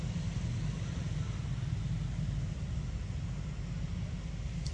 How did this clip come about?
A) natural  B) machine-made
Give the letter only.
A